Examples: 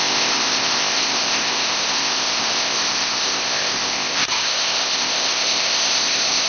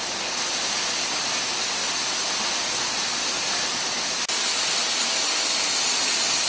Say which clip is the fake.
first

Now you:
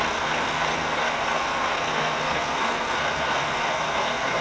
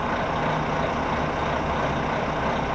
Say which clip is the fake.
first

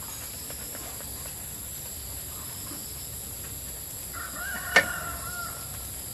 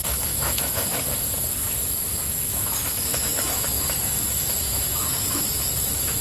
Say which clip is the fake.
second